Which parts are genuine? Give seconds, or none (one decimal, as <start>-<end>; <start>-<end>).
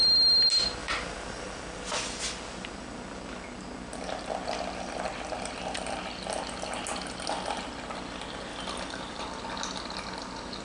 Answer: 0.0-0.8; 2.4-8.5; 9.2-10.6